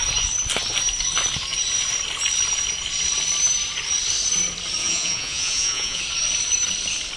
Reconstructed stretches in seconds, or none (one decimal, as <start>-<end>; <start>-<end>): 4.8-6.0